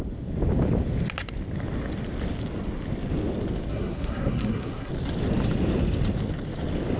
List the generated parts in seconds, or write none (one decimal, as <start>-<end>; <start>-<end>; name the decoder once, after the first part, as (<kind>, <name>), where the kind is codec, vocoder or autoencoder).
3.7-4.9 (codec, SNAC)